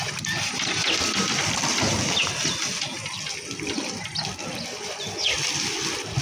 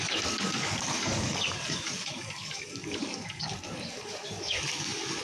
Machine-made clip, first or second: second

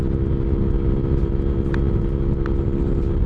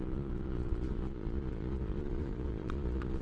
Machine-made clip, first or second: second